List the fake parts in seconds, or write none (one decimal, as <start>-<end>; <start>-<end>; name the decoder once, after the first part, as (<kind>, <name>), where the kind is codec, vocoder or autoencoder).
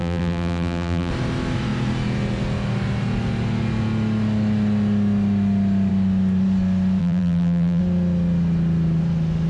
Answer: 0.0-1.1 (vocoder, BigVGAN v2); 7.0-7.8